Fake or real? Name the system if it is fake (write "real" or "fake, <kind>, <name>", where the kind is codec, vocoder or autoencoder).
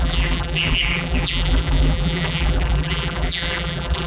fake, vocoder, BigVGAN v2